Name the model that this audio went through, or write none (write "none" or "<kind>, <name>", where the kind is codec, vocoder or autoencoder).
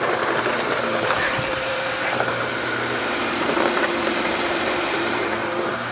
vocoder, BigVGAN v2